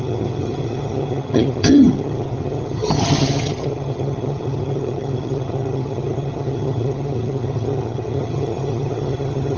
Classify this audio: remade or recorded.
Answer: remade